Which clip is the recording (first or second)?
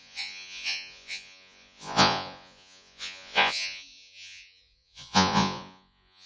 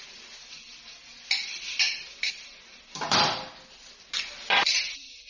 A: second